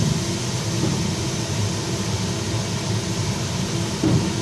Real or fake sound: real